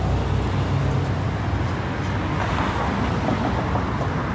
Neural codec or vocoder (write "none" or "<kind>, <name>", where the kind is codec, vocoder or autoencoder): none